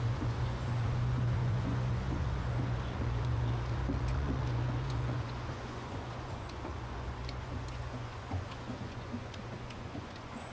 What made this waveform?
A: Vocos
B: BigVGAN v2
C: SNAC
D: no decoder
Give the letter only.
A